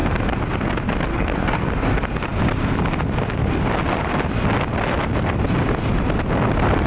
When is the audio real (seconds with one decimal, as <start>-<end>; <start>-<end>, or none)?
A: 0.0-1.1; 1.7-6.9